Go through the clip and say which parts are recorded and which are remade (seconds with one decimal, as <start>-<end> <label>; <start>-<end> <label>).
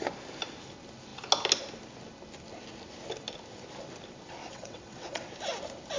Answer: 0.0-4.4 recorded; 4.4-5.3 remade; 5.3-6.0 recorded